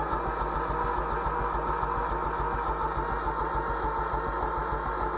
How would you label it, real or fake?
real